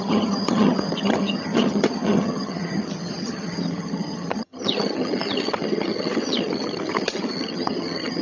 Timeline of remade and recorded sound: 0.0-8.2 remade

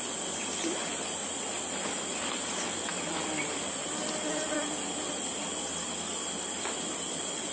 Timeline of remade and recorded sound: 0.0-7.5 recorded

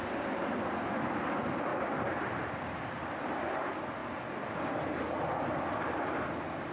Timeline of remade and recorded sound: 0.0-6.7 recorded

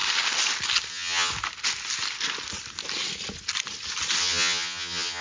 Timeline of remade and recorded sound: 0.0-0.9 recorded; 0.9-1.3 remade; 1.3-4.2 recorded; 4.2-5.2 remade

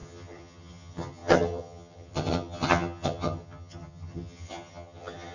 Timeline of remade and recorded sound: 0.0-5.3 remade